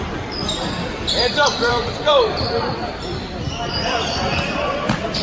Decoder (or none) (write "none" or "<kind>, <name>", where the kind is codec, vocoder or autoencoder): vocoder, BigVGAN v2